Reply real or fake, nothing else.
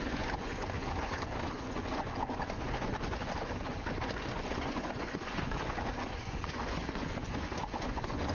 fake